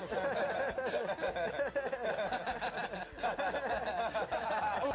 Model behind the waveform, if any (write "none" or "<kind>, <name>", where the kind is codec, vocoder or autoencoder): none